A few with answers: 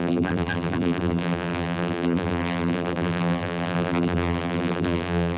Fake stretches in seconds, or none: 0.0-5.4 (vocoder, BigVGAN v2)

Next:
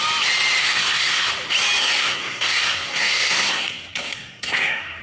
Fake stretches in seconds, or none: 0.6-1.3 (codec, SNAC); 1.8-5.0

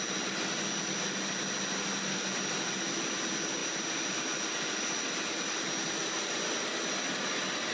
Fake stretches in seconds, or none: none

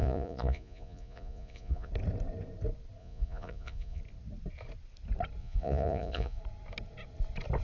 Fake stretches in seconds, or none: 0.0-1.9 (vocoder, Vocos); 3.0-4.0; 5.4-6.4

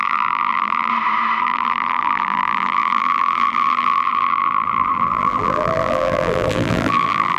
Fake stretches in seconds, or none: 0.0-0.9 (vocoder, BigVGAN v2); 1.4-7.4

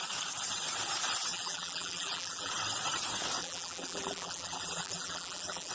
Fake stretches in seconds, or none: 1.3-2.5 (vocoder, BigVGAN v2); 3.4-5.7

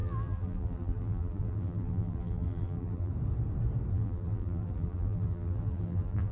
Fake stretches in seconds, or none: 0.0-3.1 (vocoder, BigVGAN v2); 3.9-6.3

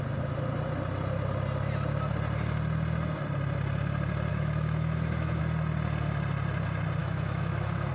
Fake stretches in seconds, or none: 4.3-5.4 (autoencoder, DAC-VAE); 7.0-7.9